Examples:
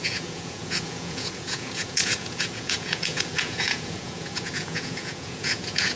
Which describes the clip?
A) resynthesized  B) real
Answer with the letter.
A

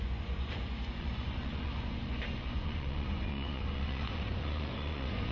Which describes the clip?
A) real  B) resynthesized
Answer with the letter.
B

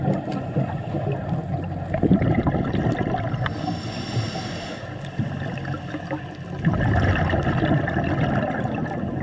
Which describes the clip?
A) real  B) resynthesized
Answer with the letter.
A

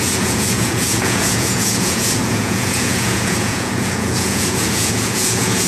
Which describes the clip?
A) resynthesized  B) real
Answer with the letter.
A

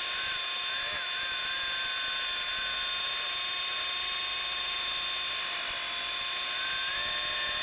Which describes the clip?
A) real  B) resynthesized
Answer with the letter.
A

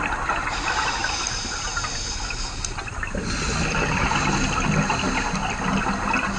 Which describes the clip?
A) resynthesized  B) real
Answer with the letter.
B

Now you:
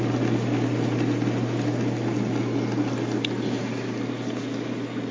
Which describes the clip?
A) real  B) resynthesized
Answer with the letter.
A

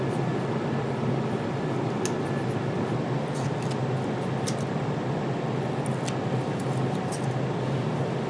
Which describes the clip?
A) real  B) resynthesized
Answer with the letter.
A